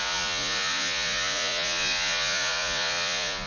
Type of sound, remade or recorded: remade